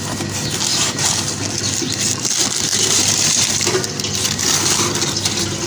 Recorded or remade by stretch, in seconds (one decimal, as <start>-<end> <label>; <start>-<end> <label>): 0.0-0.7 recorded; 0.7-1.4 remade; 1.4-2.7 recorded; 2.7-3.5 remade; 3.5-5.7 recorded